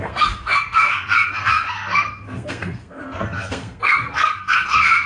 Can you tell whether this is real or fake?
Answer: fake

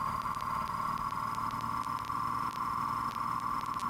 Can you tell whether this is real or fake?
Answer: real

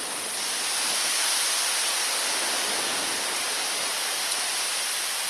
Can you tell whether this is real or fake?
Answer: real